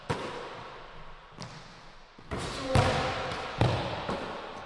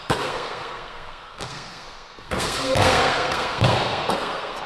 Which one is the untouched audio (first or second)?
first